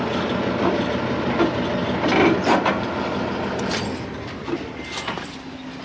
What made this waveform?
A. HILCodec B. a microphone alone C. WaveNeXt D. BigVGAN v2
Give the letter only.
B